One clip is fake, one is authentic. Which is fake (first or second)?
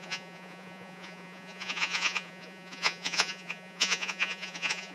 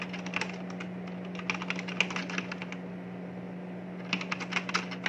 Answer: first